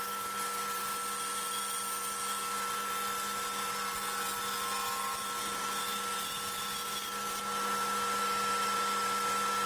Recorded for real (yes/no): yes